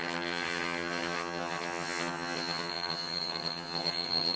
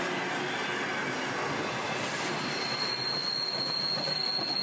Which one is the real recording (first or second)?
second